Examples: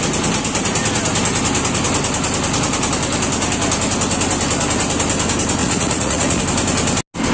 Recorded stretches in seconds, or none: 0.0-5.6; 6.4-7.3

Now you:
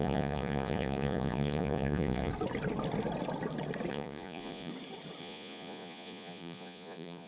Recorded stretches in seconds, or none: 2.3-3.9; 4.7-5.2